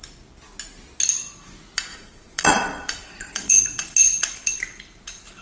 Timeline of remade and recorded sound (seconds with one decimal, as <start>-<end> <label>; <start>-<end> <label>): 0.0-1.9 recorded; 1.9-3.6 remade; 3.6-5.4 recorded